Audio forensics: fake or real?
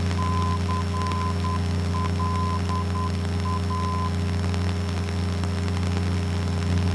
real